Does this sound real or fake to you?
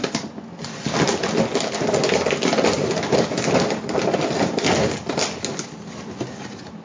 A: real